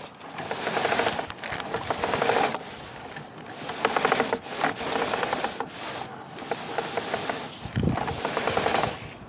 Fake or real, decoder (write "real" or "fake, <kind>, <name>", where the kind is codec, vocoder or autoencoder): real